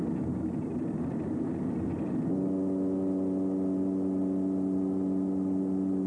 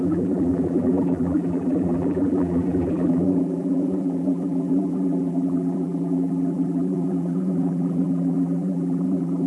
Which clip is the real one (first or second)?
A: first